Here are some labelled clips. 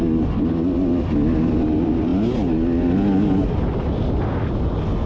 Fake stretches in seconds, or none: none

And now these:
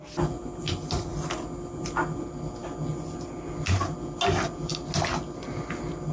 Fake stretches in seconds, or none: none